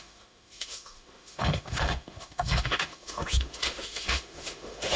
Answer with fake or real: fake